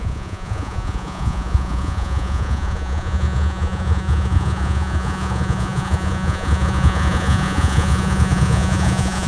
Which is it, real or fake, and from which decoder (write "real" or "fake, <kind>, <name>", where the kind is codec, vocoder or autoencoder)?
fake, vocoder, Vocos